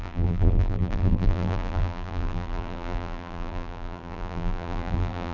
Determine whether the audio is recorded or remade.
remade